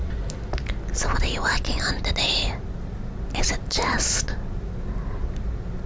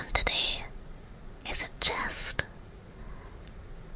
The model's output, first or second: second